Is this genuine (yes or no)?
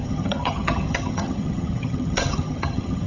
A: no